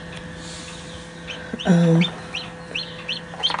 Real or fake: real